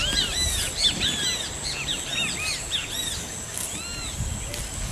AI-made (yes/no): no